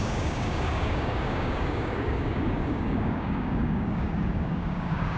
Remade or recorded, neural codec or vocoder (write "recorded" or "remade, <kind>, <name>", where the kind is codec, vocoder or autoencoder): remade, codec, DAC